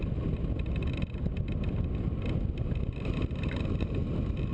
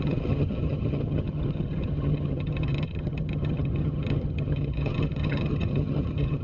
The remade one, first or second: second